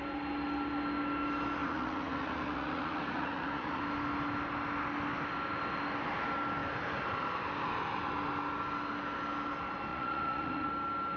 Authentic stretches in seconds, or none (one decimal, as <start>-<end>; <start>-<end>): 0.0-1.6; 3.8-9.9; 10.7-11.2